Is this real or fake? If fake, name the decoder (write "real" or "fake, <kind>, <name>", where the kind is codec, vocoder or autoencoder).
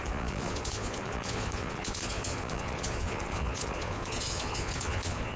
fake, vocoder, Vocos